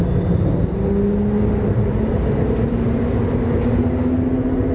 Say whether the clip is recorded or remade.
recorded